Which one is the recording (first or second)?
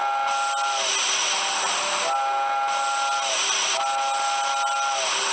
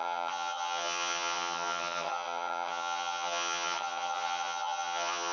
first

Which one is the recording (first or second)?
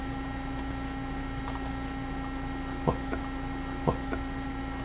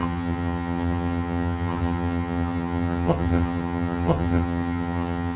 first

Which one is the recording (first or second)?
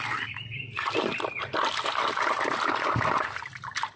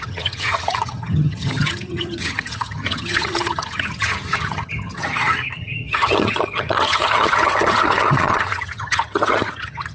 first